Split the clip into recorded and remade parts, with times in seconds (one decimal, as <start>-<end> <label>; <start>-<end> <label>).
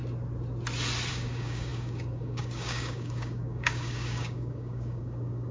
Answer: 0.0-1.1 recorded; 1.1-5.5 remade